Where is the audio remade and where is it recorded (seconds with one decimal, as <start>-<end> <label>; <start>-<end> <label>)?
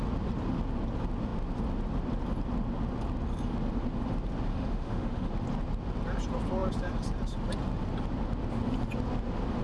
0.0-4.5 recorded; 4.5-5.3 remade; 5.3-9.6 recorded